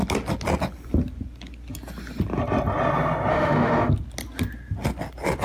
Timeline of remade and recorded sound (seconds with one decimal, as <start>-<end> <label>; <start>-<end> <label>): 0.0-3.3 recorded; 3.3-3.9 remade; 3.9-5.4 recorded

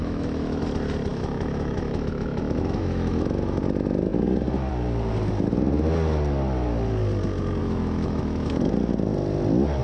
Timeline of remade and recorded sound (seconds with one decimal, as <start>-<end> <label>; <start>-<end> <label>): 0.0-0.6 remade; 0.6-1.1 recorded; 1.1-3.6 remade; 3.6-7.6 recorded; 7.6-8.7 remade; 8.7-9.8 recorded

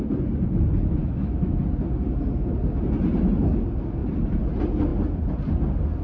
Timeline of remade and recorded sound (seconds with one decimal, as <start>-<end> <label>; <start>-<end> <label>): 0.0-1.0 recorded; 1.0-1.6 remade; 1.6-6.0 recorded

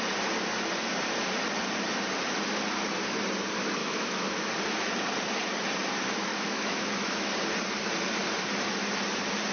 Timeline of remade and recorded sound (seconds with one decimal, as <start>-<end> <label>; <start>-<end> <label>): 0.0-3.8 recorded; 3.8-4.4 remade; 4.4-6.3 recorded; 6.3-7.3 remade; 7.3-9.5 recorded

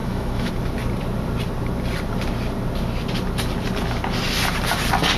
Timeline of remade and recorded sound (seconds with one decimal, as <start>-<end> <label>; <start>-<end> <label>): 0.0-0.5 remade; 0.5-5.2 recorded

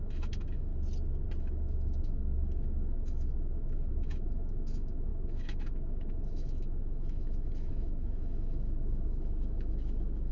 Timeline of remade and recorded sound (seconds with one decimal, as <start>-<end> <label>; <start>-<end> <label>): 0.0-0.7 remade; 0.7-1.4 recorded; 1.4-10.3 remade

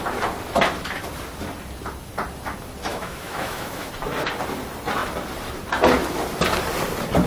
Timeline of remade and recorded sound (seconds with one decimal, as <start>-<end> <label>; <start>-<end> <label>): 0.0-2.9 recorded; 2.9-3.9 remade; 3.9-7.3 recorded